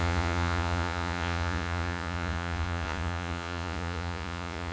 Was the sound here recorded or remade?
remade